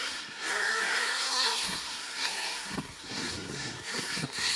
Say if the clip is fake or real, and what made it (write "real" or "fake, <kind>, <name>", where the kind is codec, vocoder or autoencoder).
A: fake, codec, SNAC